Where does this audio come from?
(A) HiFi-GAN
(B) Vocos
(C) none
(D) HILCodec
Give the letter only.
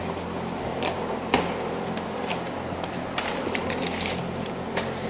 C